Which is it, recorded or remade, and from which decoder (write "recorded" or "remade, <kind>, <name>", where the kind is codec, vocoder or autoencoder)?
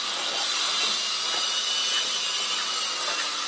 recorded